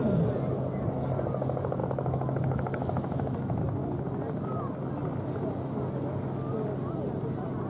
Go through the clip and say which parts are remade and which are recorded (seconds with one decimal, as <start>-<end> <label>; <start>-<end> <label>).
0.0-1.8 recorded; 1.8-3.6 remade; 3.6-7.7 recorded